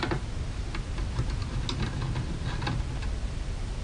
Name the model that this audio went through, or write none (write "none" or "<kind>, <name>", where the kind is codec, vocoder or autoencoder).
none